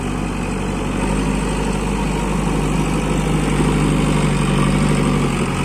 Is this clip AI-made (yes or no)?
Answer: no